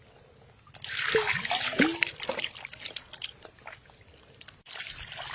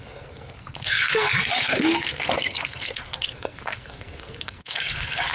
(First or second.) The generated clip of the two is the second